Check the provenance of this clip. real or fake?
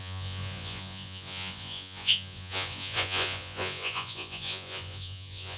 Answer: fake